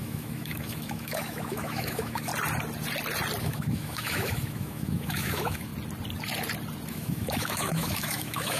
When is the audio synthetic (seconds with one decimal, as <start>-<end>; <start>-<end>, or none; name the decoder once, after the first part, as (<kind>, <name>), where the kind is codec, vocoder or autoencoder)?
0.0-2.3 (autoencoder, DAC-VAE); 3.4-5.7; 6.9-8.6